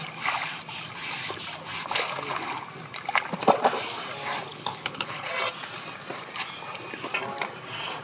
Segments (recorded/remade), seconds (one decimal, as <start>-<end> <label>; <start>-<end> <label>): 0.0-4.5 recorded; 4.5-5.3 remade; 5.3-8.0 recorded